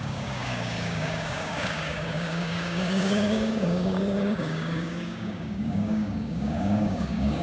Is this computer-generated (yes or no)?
yes